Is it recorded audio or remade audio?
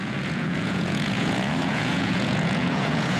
remade